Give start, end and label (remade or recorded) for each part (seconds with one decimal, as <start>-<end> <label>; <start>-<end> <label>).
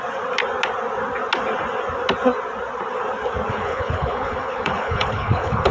0.0-3.5 recorded; 3.5-5.7 remade